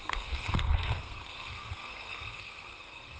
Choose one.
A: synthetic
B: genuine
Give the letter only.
A